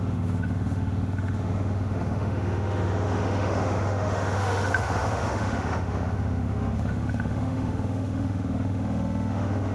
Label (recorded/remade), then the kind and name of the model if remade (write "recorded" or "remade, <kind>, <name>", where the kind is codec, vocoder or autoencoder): remade, autoencoder, DAC-VAE